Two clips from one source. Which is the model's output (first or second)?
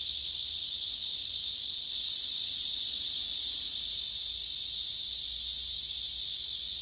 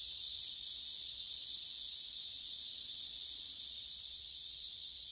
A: second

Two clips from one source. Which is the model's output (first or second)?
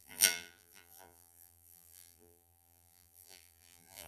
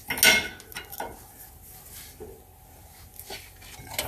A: first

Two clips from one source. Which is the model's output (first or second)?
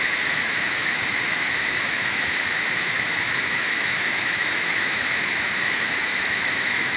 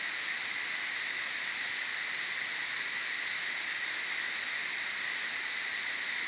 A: first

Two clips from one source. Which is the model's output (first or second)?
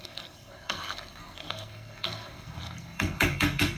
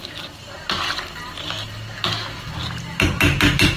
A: first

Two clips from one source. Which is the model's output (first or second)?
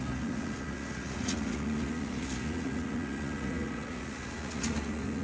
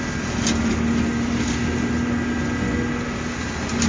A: first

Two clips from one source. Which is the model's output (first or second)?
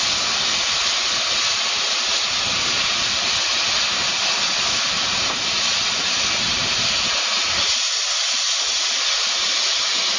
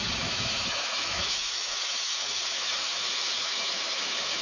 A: second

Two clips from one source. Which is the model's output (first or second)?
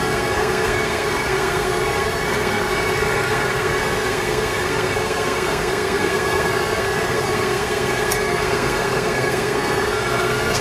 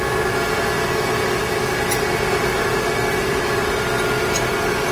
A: first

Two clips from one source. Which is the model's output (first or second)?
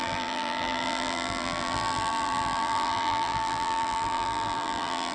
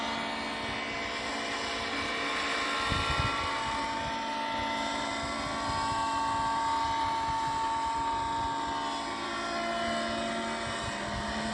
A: first